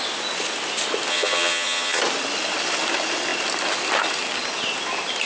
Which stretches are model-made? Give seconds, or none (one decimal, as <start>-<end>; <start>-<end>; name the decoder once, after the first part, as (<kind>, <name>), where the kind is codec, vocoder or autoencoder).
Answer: 1.1-2.0 (vocoder, HiFi-GAN)